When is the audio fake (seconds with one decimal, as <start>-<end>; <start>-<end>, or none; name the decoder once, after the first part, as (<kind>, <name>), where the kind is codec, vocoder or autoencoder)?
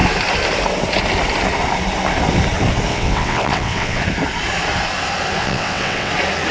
2.9-4.0 (vocoder, WaveNeXt); 5.4-6.1